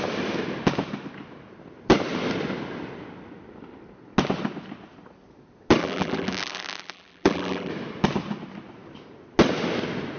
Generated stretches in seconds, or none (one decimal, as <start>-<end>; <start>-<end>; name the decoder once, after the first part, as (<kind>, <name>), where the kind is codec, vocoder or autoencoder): 5.8-7.7 (vocoder, BigVGAN v2)